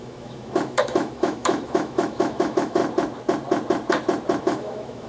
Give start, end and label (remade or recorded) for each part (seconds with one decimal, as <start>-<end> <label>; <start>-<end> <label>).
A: 0.0-2.8 remade; 2.8-4.4 recorded; 4.4-5.1 remade